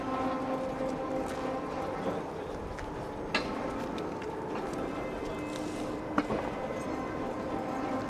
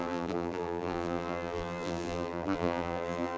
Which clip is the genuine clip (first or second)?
first